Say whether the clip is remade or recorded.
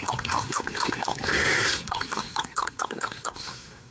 remade